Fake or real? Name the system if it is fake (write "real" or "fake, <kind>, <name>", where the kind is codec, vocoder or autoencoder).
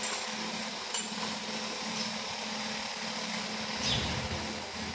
real